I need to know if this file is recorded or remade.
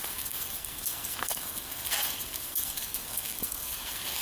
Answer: remade